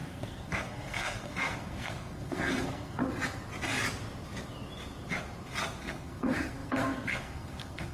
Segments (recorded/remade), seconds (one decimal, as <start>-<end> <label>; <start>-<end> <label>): 0.0-3.0 remade; 3.0-5.8 recorded; 5.8-7.9 remade